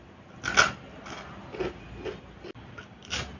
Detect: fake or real real